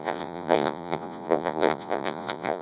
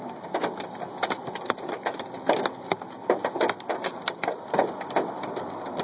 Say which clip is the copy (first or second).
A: first